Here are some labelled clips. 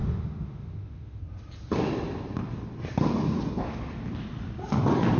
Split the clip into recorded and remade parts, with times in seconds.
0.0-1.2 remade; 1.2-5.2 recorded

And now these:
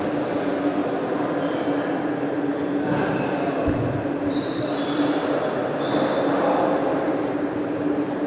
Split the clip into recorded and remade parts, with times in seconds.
0.0-6.8 recorded; 6.8-8.3 remade